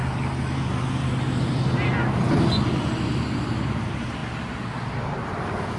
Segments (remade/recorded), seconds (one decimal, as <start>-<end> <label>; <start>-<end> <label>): 0.0-1.6 remade; 1.6-4.2 recorded; 4.2-4.9 remade; 4.9-5.8 recorded